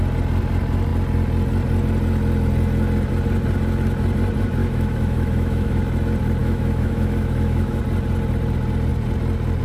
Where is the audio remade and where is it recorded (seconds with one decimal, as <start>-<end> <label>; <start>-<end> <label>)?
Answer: 0.0-4.6 recorded; 4.6-5.8 remade; 5.8-6.4 recorded; 6.4-7.8 remade; 7.8-9.6 recorded